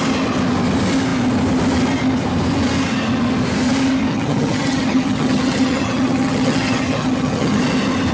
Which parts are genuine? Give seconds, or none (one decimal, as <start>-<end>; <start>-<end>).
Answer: 0.0-4.1; 7.6-8.1